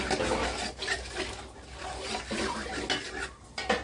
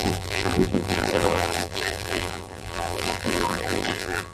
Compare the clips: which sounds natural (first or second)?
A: first